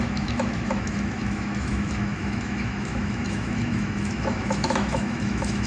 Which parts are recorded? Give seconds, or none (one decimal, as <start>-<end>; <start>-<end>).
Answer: none